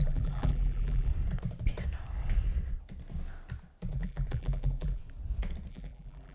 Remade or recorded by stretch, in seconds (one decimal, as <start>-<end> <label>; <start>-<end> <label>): 0.0-1.1 remade; 1.1-3.9 recorded; 3.9-5.0 remade; 5.0-5.7 recorded; 5.7-6.3 remade